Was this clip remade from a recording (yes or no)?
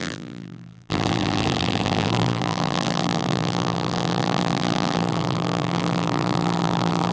yes